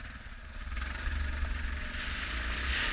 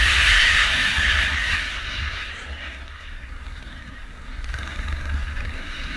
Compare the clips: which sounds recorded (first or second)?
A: first